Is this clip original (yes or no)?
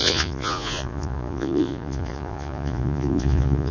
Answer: no